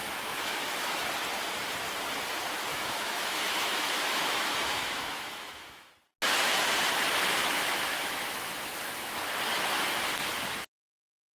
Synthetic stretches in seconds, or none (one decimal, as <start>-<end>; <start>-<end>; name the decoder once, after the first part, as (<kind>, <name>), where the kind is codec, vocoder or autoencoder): 0.0-1.0 (autoencoder, DAC-VAE); 2.7-5.9; 7.4-9.3